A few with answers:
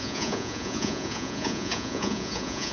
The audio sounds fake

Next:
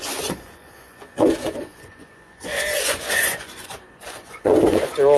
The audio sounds fake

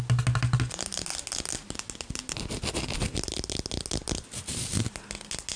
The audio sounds real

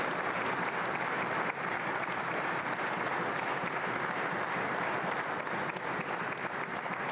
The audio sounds real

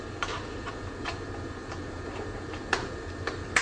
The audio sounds real